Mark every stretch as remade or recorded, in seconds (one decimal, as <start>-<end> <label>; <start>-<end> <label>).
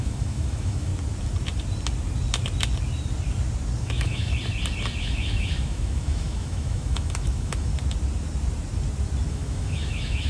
0.0-0.9 remade; 0.9-3.8 recorded; 3.8-4.3 remade; 4.3-5.0 recorded; 5.0-7.7 remade; 7.7-9.3 recorded; 9.3-10.3 remade